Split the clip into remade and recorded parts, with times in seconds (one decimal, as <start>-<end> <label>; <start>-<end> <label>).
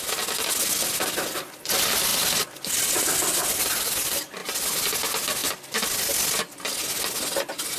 0.0-7.8 recorded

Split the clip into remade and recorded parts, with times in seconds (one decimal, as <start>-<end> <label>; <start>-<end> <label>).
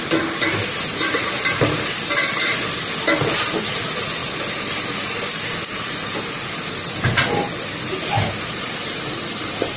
0.0-0.6 recorded; 0.6-1.3 remade; 1.3-9.1 recorded; 9.1-9.8 remade